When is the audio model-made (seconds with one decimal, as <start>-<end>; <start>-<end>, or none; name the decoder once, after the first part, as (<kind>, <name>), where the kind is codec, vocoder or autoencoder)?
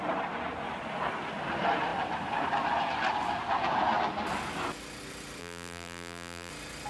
5.4-6.5 (vocoder, BigVGAN v2)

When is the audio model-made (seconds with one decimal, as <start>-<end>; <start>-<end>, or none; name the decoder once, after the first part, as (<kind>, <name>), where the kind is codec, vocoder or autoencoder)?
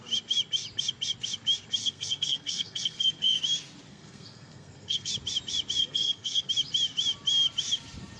1.8-3.4 (codec, SNAC); 3.9-5.1; 5.8-6.5